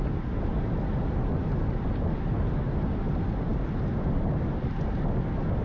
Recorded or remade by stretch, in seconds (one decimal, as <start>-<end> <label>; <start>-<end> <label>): 0.0-5.6 recorded